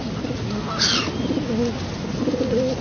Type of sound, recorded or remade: recorded